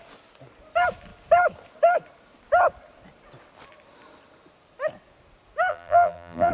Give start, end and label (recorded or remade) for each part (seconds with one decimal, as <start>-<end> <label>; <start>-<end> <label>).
0.0-5.7 recorded; 5.7-6.5 remade

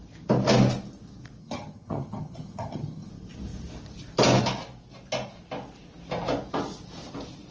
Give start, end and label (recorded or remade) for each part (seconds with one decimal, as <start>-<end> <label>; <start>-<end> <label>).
0.0-1.4 recorded; 1.4-3.1 remade; 3.1-7.5 recorded

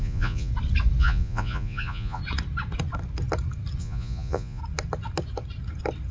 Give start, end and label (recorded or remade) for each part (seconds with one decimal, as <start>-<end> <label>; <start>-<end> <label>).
0.0-0.5 remade; 0.5-1.0 recorded; 1.0-2.2 remade; 2.2-3.8 recorded; 3.8-4.6 remade; 4.6-6.1 recorded

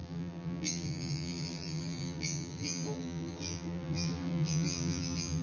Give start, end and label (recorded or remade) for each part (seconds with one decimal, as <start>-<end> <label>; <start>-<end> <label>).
0.0-5.4 remade

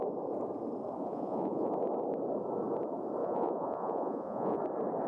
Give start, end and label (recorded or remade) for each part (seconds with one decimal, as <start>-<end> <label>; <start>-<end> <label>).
0.0-1.0 recorded; 1.0-1.7 remade; 1.7-3.2 recorded; 3.2-4.6 remade; 4.6-5.1 recorded

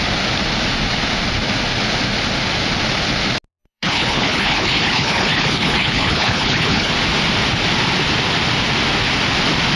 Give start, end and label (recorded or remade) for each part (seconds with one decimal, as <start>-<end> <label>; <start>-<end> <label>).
0.0-3.6 recorded; 3.6-6.9 remade; 6.9-9.8 recorded

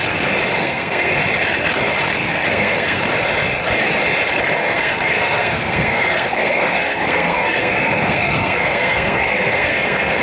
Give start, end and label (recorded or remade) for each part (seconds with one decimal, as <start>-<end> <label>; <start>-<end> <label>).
0.0-0.6 recorded; 0.6-1.1 remade; 1.1-2.2 recorded; 2.2-3.0 remade; 3.0-4.6 recorded; 4.6-10.2 remade

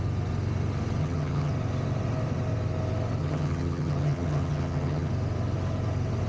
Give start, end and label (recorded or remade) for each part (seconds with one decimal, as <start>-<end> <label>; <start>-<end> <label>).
0.0-1.0 recorded; 1.0-1.5 remade; 1.5-3.2 recorded; 3.2-5.1 remade; 5.1-6.3 recorded